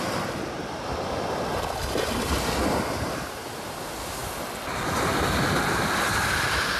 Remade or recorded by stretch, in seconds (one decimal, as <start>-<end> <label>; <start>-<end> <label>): 0.0-6.8 recorded